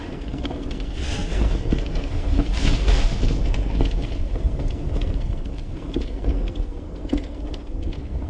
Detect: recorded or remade remade